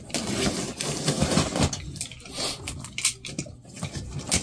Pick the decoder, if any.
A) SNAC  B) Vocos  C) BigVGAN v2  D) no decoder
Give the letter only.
D